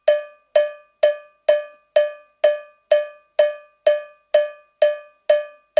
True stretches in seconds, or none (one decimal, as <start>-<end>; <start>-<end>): 0.0-5.8